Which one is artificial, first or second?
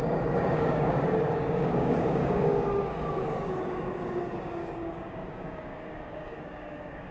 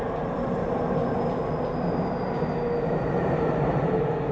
first